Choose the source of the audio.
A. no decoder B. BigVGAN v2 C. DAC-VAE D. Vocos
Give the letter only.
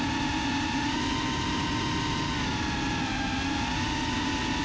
A